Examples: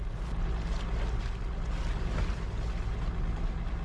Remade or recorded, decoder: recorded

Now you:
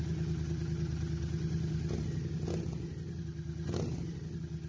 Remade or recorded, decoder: recorded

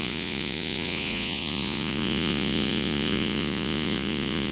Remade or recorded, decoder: remade, vocoder, Vocos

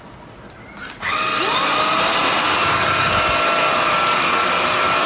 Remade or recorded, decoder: recorded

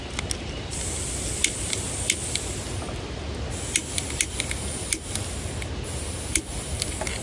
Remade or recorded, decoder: recorded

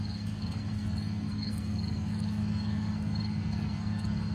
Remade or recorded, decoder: remade, codec, SNAC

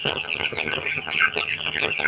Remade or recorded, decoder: remade, vocoder, HiFi-GAN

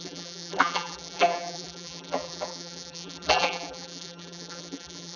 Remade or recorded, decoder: remade, vocoder, BigVGAN v2